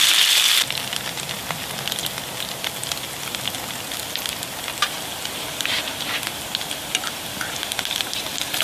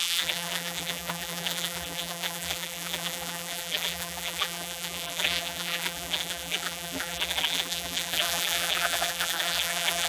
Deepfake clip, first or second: second